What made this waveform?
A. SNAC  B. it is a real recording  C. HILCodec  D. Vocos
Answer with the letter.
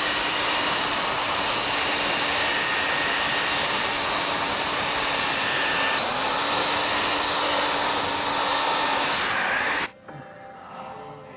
B